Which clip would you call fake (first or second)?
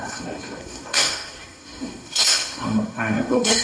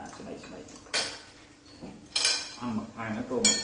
first